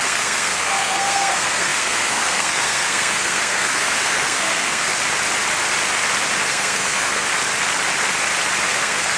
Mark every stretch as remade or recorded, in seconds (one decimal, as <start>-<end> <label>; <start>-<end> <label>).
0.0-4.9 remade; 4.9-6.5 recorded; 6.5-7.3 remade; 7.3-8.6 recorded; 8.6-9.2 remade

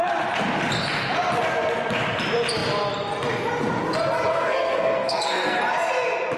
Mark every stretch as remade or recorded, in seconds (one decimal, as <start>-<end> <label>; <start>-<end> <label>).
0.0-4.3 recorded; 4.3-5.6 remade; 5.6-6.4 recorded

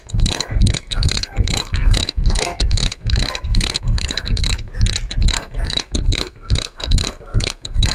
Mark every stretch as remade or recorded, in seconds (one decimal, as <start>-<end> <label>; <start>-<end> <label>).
0.0-4.7 remade; 4.7-5.3 recorded; 5.3-7.9 remade

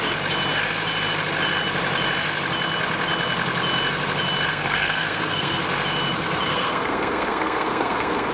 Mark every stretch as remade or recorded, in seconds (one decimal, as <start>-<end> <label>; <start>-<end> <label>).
0.0-4.5 recorded; 4.5-5.6 remade; 5.6-6.5 recorded; 6.5-8.3 remade

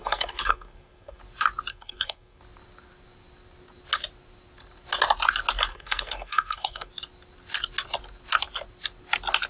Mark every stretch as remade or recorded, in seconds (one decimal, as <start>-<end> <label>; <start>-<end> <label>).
0.0-1.2 remade; 1.2-1.7 recorded; 1.7-2.4 remade; 2.4-5.7 recorded; 5.7-6.9 remade; 6.9-9.5 recorded

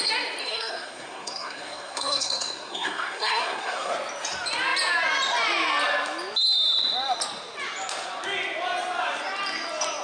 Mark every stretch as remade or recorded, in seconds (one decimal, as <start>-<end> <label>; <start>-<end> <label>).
0.0-0.4 recorded; 0.4-3.9 remade; 3.9-10.0 recorded